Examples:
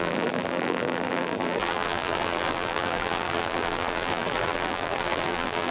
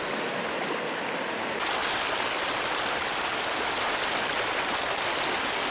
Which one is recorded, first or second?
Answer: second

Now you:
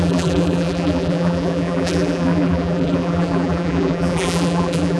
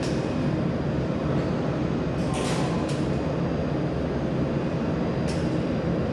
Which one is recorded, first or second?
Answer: second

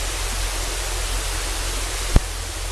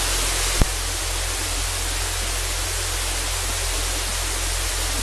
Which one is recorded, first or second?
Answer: second